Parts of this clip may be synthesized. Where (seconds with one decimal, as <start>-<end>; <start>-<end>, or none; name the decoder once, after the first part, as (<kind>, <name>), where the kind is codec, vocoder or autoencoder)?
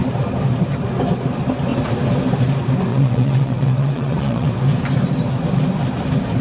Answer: 2.9-4.5 (vocoder, WaveNeXt)